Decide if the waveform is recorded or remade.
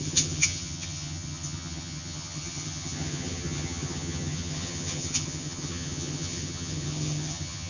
remade